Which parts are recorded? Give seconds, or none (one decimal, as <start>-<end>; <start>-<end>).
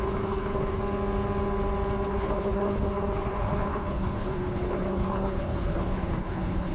0.8-2.1